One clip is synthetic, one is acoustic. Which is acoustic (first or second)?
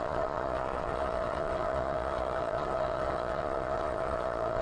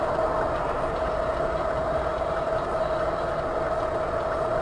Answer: second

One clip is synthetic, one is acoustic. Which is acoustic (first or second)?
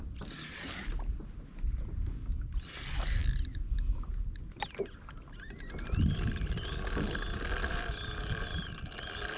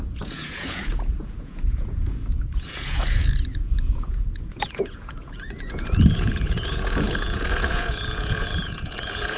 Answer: first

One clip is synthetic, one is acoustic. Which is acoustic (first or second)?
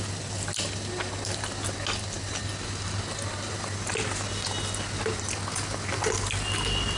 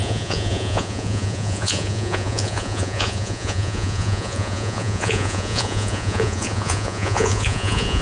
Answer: first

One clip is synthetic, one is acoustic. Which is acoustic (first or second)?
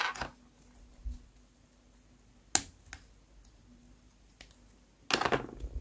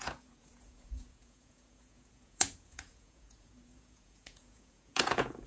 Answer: first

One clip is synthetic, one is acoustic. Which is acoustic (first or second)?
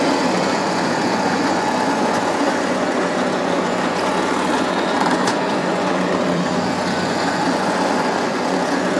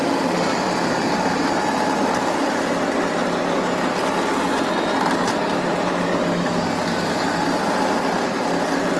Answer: second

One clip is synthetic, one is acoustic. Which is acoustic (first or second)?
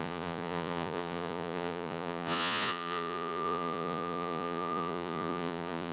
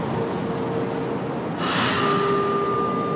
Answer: second